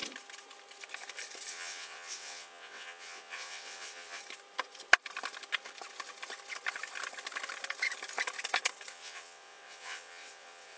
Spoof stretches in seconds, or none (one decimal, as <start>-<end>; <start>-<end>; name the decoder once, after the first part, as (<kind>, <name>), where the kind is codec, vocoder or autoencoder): 1.5-4.2 (vocoder, WaveNeXt); 8.9-10.8